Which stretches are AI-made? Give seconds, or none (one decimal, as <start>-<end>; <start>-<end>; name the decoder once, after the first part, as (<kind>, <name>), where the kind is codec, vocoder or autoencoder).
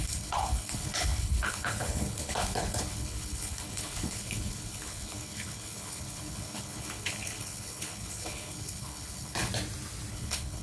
0.0-9.5 (codec, HILCodec); 10.1-10.6